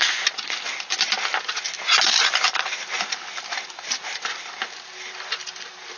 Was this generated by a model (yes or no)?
no